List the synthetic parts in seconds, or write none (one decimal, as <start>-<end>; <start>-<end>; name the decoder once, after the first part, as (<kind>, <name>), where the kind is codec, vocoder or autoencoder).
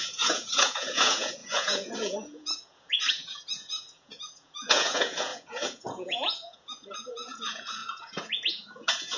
0.0-9.2 (vocoder, Vocos)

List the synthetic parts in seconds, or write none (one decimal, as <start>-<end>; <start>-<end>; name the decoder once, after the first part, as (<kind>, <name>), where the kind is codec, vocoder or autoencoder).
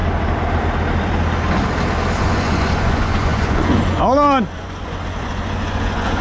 2.2-6.2 (vocoder, Vocos)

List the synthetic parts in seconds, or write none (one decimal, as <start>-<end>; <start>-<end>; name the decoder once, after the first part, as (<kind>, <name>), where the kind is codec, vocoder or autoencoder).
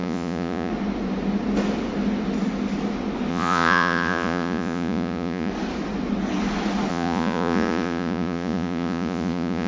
0.0-0.7 (vocoder, Vocos); 3.3-5.5; 6.9-9.7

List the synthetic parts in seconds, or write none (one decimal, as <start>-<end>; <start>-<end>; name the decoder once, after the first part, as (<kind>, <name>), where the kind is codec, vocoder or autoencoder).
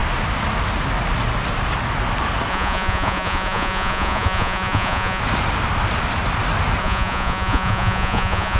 2.5-5.2 (vocoder, Vocos); 6.8-8.6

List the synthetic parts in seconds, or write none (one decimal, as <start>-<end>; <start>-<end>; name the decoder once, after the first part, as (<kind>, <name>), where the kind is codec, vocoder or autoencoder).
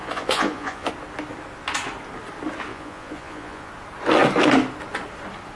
0.0-0.9 (vocoder, Vocos); 2.7-3.7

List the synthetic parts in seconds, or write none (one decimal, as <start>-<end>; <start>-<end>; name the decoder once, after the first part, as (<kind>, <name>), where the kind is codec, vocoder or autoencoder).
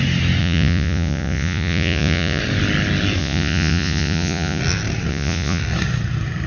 0.4-2.4 (vocoder, Vocos); 3.2-4.6; 5.1-5.6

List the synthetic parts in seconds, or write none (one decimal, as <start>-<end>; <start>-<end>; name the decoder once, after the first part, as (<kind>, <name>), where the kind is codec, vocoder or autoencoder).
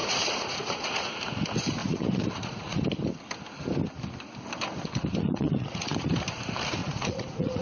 0.0-1.1 (vocoder, Vocos); 1.8-2.8; 5.2-6.1; 6.8-7.6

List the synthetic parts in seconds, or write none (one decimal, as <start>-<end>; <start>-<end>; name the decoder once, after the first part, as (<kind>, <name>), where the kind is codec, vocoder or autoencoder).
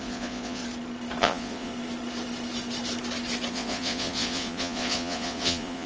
0.0-0.6 (vocoder, Vocos); 1.2-1.7; 3.5-5.9